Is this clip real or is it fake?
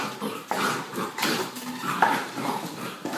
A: fake